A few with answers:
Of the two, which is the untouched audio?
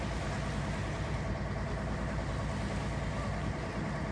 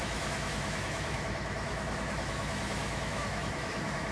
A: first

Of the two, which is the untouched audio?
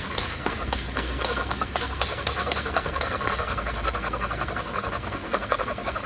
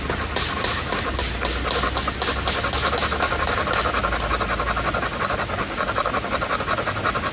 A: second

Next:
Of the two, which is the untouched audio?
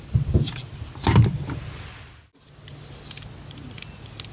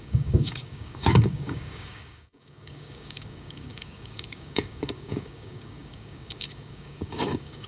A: first